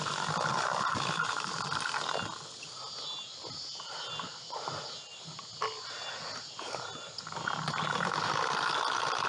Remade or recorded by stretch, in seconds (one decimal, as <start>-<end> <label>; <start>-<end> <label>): 0.0-9.3 recorded